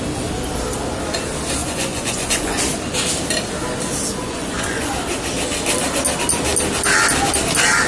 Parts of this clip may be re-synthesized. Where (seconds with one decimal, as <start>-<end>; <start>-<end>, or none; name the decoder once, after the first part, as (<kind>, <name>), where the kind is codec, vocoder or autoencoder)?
1.6-2.6 (vocoder, Vocos); 4.1-4.9